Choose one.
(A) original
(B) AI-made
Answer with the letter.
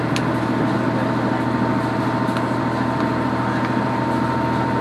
A